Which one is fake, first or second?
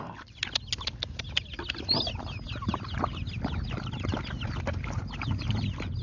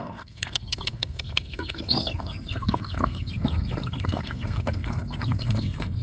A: second